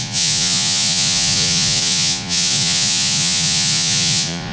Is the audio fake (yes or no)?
yes